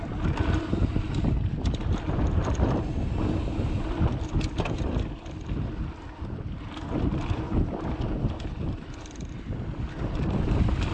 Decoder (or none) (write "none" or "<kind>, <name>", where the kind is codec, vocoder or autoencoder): none